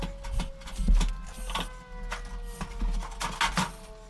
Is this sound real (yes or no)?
yes